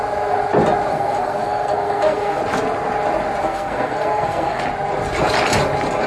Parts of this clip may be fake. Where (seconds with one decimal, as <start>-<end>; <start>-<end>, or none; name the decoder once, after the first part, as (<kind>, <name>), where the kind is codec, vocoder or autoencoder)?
0.9-2.4 (codec, SNAC); 3.4-4.6